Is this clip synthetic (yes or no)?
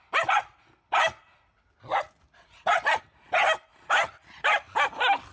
no